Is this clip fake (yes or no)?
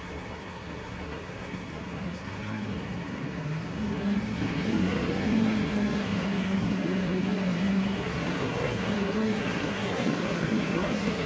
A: yes